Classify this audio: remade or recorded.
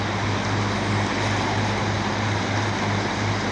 recorded